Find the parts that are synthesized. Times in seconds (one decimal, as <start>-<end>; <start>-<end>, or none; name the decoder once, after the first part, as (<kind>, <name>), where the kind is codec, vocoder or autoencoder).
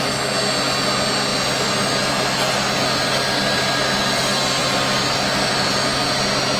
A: none